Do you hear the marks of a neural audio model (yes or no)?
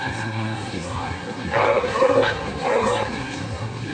yes